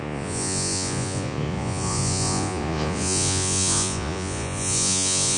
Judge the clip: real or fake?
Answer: fake